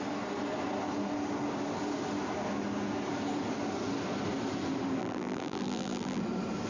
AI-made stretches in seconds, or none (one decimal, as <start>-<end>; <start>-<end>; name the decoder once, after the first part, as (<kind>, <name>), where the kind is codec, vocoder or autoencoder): 5.0-6.2 (vocoder, BigVGAN v2)